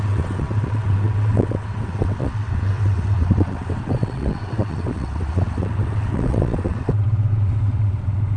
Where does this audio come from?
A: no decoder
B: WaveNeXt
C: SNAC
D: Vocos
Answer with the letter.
B